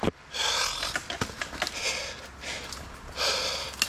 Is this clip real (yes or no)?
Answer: yes